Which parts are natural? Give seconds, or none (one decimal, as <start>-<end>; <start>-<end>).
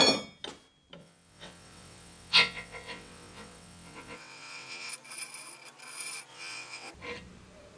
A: 0.0-1.0; 4.9-6.3; 6.9-7.8